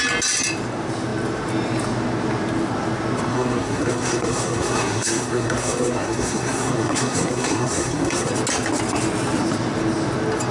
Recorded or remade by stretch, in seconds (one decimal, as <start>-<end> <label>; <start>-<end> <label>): 0.0-3.3 recorded; 3.3-8.3 remade; 8.3-10.5 recorded

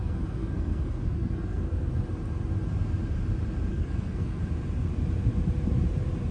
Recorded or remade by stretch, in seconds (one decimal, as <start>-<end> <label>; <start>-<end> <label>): 0.0-1.9 remade; 1.9-3.7 recorded; 3.7-4.4 remade; 4.4-6.3 recorded